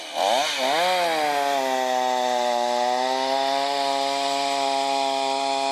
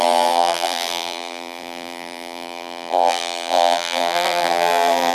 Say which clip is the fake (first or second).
second